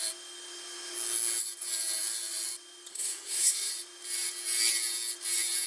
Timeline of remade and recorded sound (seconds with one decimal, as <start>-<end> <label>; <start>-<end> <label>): 0.0-2.9 recorded; 2.9-3.7 remade; 3.7-5.7 recorded